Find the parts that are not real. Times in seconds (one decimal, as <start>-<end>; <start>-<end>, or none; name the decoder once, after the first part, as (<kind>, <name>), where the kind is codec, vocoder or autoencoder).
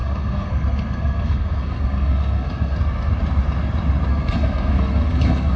0.0-3.1 (codec, SNAC); 4.1-5.6